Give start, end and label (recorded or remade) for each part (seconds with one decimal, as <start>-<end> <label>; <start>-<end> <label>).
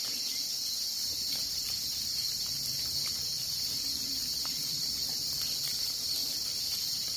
0.0-0.7 remade; 0.7-1.1 recorded; 1.1-5.4 remade; 5.4-6.2 recorded; 6.2-7.2 remade